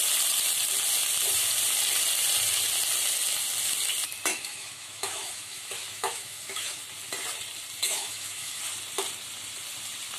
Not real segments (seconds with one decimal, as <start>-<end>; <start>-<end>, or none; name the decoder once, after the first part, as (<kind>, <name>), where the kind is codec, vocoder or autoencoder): 4.3-6.8 (autoencoder, DAC-VAE); 7.8-8.6